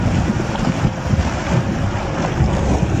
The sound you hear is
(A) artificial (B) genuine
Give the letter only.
B